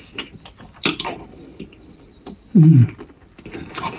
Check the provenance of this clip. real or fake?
real